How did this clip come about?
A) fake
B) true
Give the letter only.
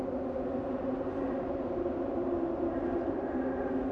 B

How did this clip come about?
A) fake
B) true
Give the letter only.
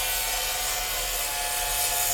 B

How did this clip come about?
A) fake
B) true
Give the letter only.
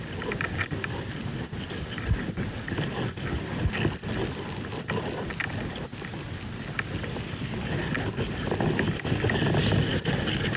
B